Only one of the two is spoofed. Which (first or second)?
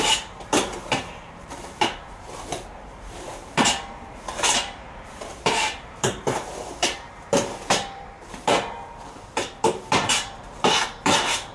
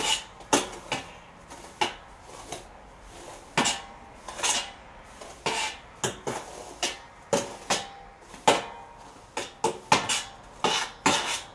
first